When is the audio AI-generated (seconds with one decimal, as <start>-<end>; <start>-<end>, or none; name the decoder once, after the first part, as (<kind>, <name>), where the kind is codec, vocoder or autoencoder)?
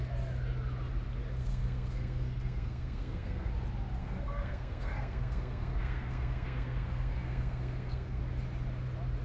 1.4-3.5 (codec, SNAC); 4.0-8.2